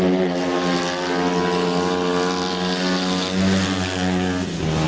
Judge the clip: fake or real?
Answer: real